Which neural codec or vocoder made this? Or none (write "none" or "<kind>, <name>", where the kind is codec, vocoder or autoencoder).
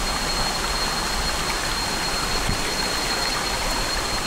none